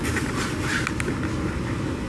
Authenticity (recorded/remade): recorded